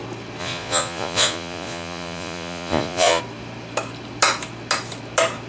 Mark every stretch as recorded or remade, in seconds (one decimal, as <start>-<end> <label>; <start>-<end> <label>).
0.0-0.4 recorded; 0.4-3.2 remade; 3.2-5.5 recorded